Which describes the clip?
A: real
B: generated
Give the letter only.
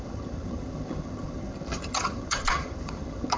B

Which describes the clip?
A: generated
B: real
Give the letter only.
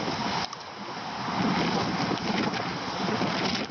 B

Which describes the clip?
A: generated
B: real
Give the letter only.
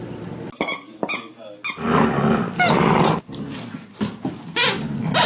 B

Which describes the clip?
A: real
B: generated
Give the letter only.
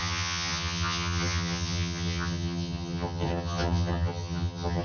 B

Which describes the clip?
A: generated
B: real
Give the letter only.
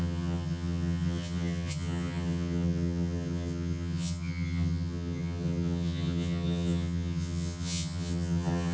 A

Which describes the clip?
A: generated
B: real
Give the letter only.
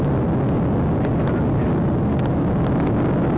B